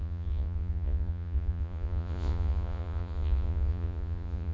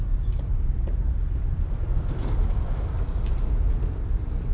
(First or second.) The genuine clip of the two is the second